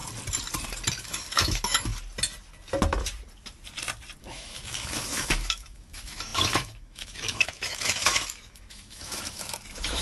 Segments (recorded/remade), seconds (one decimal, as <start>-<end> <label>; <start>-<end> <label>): 0.0-1.0 recorded; 1.0-1.9 remade; 1.9-4.2 recorded; 4.2-10.0 remade